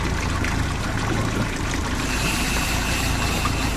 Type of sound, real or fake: fake